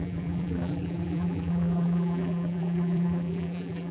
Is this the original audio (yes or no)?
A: no